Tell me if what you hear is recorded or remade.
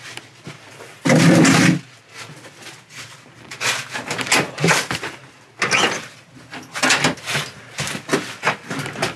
recorded